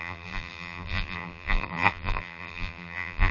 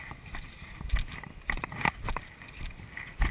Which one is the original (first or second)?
second